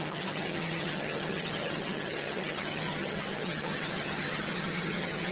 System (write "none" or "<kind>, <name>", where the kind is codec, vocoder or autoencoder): vocoder, HiFi-GAN